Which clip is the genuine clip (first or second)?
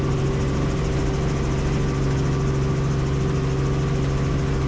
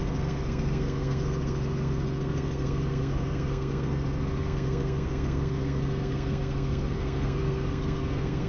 first